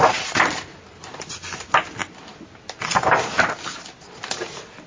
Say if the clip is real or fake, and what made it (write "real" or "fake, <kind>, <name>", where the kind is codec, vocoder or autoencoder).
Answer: real